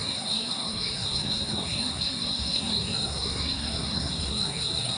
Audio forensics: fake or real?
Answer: fake